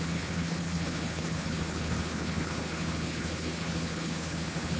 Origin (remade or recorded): remade